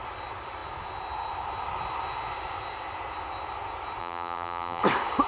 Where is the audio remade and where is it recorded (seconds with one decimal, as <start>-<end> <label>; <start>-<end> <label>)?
0.0-4.0 recorded; 4.0-4.8 remade; 4.8-5.3 recorded